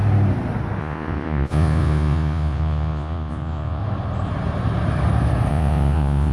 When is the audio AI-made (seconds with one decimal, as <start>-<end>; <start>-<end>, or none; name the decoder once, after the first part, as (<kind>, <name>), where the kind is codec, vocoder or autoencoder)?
0.8-3.8 (vocoder, Vocos); 5.5-6.3